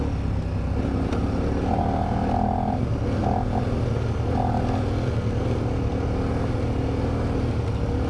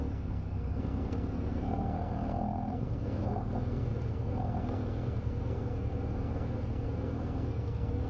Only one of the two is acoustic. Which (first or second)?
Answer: first